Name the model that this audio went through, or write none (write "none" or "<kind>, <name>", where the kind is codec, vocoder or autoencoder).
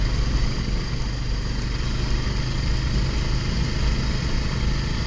none